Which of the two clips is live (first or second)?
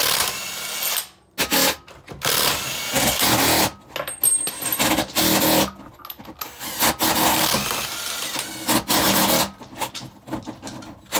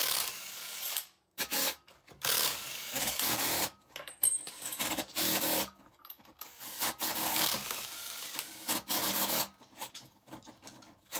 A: first